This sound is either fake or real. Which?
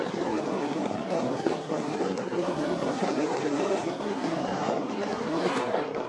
fake